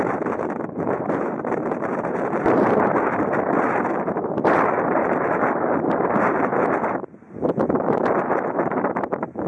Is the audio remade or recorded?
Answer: remade